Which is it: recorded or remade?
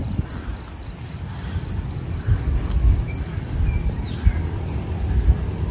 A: recorded